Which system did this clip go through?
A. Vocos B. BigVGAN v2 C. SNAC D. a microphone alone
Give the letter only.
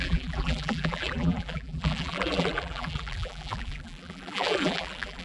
B